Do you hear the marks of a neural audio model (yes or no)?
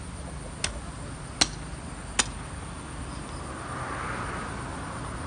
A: no